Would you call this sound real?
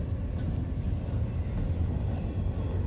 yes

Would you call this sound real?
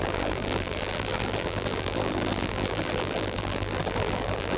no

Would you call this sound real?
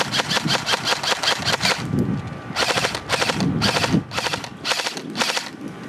yes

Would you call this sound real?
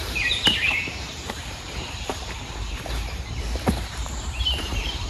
no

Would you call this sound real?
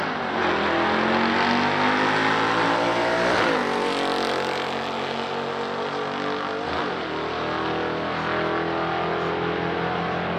yes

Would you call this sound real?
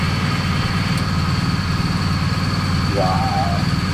yes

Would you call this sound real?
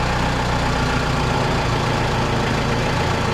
yes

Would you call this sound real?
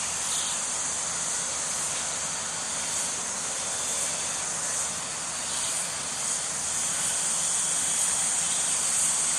yes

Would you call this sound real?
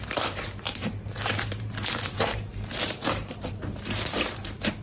no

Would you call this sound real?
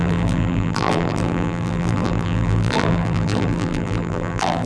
no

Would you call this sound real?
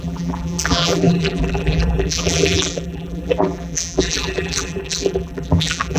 no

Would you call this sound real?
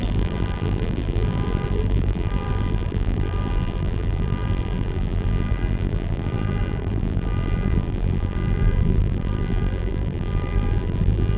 no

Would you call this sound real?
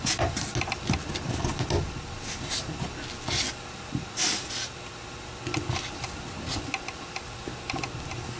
yes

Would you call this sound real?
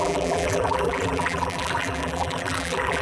no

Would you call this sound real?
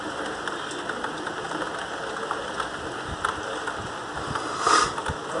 yes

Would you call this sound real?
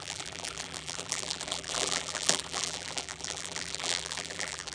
no